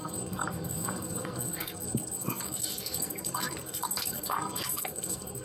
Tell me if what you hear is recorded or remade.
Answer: remade